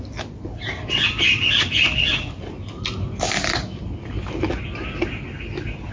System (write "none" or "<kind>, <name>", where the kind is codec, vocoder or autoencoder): none